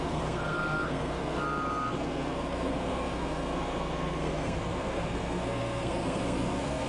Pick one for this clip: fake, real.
fake